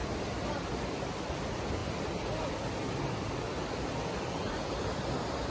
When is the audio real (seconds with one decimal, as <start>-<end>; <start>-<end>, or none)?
0.0-5.5